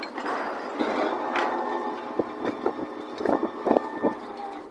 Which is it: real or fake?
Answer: real